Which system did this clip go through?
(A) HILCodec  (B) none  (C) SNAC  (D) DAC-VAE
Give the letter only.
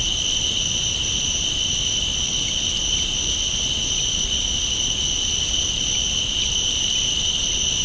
B